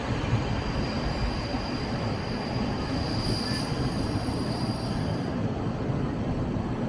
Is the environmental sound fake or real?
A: fake